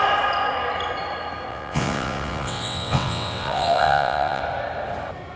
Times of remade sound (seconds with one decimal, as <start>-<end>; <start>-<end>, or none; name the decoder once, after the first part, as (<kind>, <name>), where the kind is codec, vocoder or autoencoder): 1.5-4.4 (vocoder, WaveNeXt)